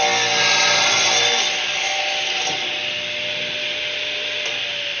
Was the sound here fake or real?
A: real